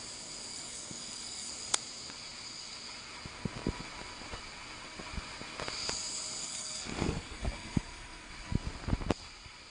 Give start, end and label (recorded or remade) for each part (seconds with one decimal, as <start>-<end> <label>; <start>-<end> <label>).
0.0-0.5 recorded; 0.5-1.5 remade; 1.5-6.4 recorded; 6.4-8.3 remade; 8.3-9.7 recorded

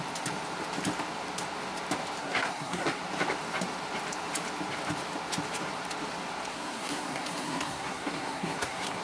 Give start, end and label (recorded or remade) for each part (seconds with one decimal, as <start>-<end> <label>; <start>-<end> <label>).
0.0-2.2 recorded; 2.2-3.0 remade; 3.0-6.5 recorded; 6.5-9.0 remade

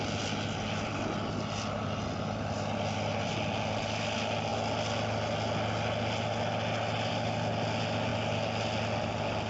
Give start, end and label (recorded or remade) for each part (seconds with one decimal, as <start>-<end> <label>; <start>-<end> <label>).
0.0-9.5 recorded